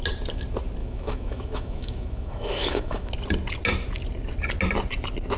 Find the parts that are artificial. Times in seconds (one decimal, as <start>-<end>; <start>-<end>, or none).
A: 0.8-3.1